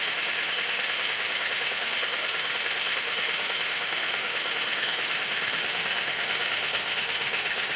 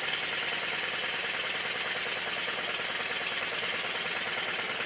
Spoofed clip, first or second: first